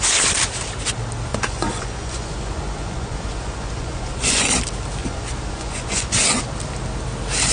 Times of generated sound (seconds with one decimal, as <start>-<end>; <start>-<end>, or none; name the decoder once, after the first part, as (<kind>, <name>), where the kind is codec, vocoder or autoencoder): 1.3-4.6 (vocoder, Vocos); 5.0-6.4